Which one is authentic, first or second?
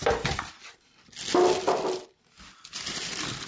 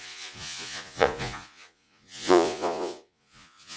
first